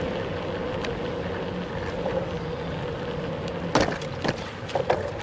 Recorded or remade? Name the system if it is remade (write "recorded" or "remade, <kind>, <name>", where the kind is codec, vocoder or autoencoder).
recorded